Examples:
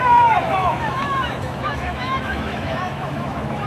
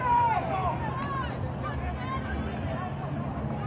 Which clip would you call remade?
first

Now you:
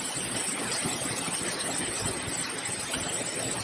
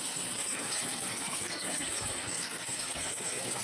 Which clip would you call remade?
second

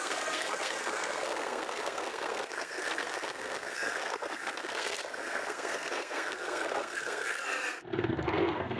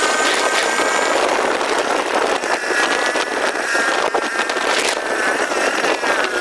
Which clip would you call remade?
first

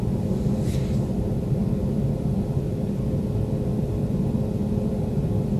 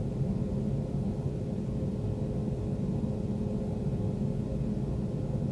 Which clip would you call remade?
first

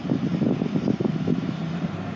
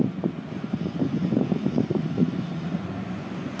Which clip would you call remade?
second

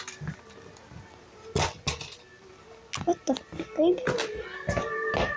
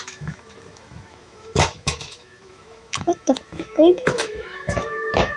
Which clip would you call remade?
second